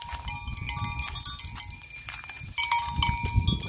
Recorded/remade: recorded